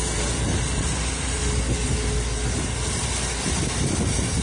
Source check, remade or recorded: recorded